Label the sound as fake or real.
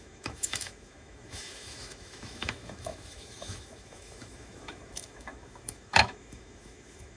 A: fake